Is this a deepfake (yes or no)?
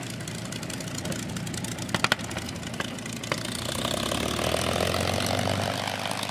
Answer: no